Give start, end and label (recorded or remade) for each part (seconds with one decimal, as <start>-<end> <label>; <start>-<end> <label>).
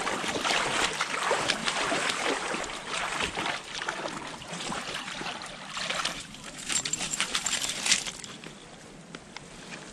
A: 0.0-1.6 recorded; 1.6-3.0 remade; 3.0-4.4 recorded; 4.4-5.5 remade; 5.5-6.1 recorded; 6.1-7.9 remade; 7.9-9.9 recorded